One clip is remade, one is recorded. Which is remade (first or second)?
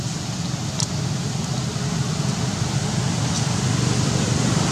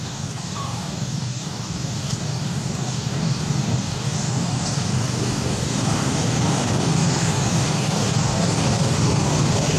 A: second